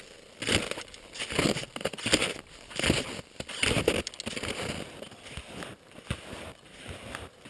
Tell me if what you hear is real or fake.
real